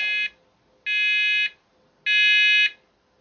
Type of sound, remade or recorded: recorded